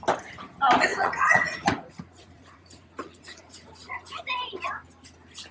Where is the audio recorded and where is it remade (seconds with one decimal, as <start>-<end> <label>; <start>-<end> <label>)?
0.0-0.9 recorded; 0.9-4.2 remade; 4.2-5.5 recorded